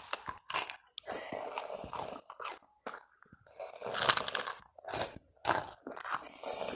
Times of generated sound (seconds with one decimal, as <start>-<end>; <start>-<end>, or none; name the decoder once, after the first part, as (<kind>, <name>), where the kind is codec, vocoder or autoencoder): none